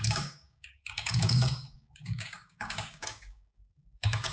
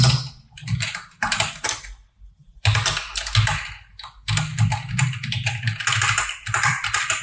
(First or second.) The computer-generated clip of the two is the first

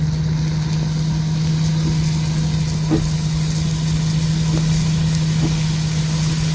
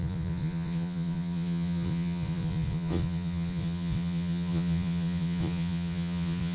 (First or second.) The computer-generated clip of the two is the second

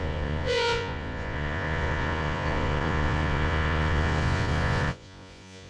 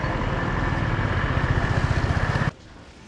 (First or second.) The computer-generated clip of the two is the first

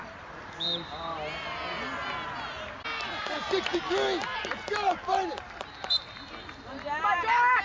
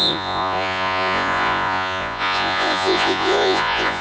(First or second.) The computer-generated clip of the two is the second